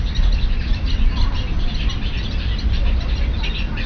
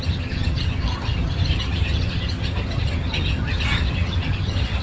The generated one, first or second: second